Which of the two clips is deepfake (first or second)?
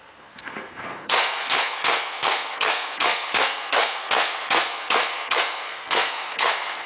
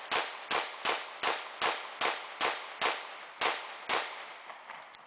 first